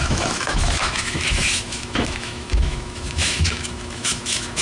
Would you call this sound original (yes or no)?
no